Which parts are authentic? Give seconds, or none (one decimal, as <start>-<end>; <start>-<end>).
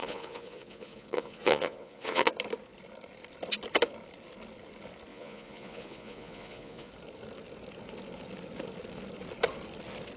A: 2.3-5.1; 6.9-10.2